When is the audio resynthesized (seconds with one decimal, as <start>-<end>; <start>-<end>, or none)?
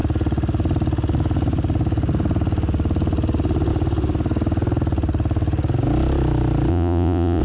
6.7-7.4